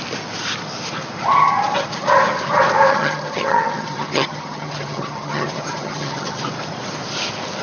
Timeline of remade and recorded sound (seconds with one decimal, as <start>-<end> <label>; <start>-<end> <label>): 0.0-2.9 recorded; 2.9-6.4 remade; 6.4-7.6 recorded